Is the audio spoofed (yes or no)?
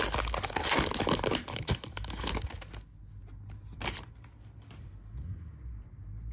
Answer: no